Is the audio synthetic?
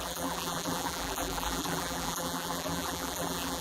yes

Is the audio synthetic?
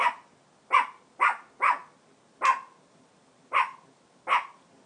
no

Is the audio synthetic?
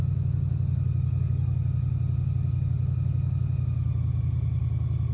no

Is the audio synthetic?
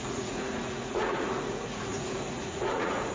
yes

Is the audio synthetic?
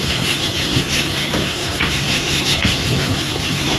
yes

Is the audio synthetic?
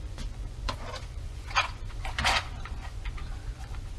yes